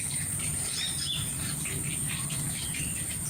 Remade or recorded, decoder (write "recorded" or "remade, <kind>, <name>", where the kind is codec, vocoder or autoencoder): recorded